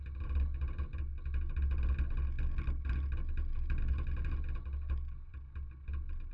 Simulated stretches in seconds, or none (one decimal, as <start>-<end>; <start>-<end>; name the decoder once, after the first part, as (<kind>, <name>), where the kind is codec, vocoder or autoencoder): none